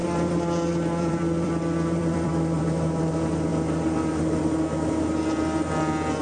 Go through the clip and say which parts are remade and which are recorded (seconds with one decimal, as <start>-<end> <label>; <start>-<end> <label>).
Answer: 0.0-3.1 remade; 3.1-6.2 recorded